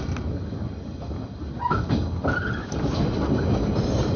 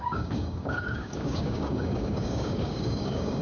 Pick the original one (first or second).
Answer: first